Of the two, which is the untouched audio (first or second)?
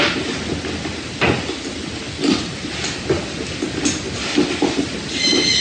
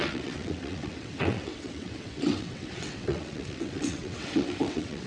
first